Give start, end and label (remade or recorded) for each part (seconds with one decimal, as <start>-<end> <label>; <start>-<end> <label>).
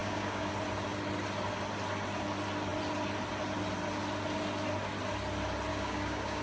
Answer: 0.0-0.5 remade; 0.5-5.7 recorded; 5.7-6.4 remade